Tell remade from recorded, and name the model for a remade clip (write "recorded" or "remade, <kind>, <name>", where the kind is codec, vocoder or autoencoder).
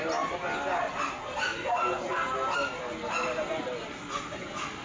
recorded